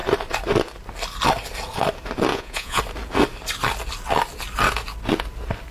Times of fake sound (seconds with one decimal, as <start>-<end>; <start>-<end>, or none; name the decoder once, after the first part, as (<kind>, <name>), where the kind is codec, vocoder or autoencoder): 2.3-2.8 (vocoder, Vocos)